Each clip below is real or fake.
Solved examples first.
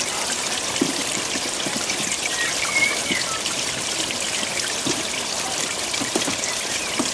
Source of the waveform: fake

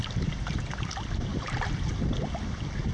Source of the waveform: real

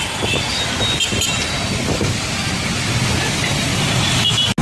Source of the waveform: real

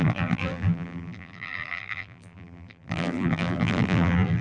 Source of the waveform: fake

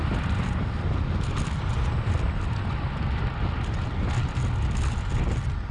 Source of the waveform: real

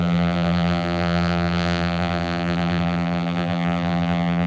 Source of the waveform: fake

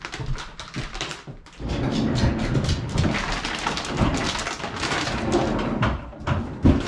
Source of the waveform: real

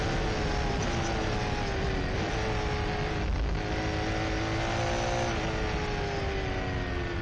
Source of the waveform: real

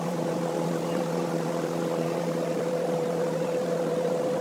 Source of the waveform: fake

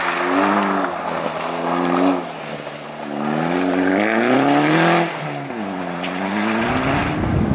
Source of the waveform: real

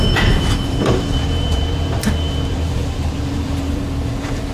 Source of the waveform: fake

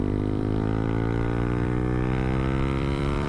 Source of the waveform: fake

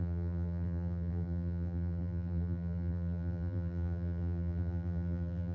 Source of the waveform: fake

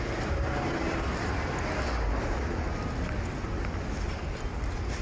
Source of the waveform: real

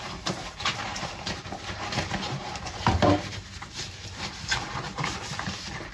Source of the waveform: fake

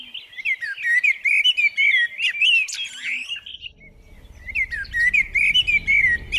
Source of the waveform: real